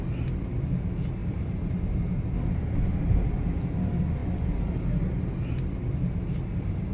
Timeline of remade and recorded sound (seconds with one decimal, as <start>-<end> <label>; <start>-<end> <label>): 0.0-1.2 recorded; 1.2-2.1 remade; 2.1-6.9 recorded